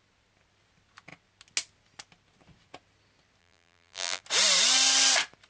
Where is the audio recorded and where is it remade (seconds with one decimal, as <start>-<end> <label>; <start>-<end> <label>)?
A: 0.0-3.4 recorded; 3.4-4.2 remade; 4.2-5.5 recorded